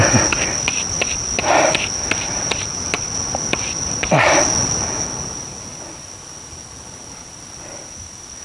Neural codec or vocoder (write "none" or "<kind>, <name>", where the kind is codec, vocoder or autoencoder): none